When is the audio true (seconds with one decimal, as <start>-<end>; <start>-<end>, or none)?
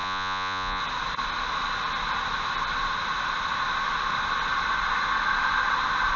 0.8-6.2